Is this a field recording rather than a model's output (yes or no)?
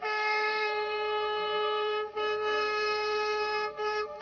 no